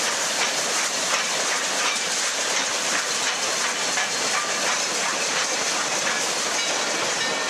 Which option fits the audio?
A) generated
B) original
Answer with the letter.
A